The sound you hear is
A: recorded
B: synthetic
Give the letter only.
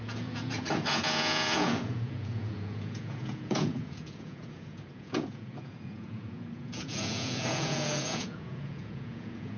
B